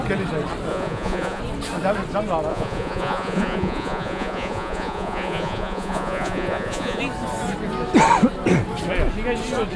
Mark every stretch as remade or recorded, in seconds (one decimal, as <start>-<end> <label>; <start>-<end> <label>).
0.0-0.7 recorded; 0.7-1.4 remade; 1.4-2.5 recorded; 2.5-7.0 remade; 7.0-9.8 recorded